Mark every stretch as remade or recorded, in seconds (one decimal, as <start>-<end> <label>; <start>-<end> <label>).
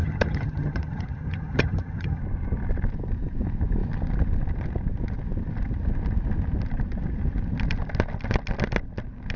0.0-2.2 remade; 2.2-9.4 recorded